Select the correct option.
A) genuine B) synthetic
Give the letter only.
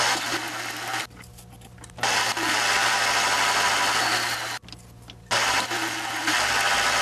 A